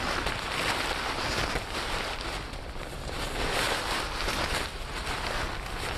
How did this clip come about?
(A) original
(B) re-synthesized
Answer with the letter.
A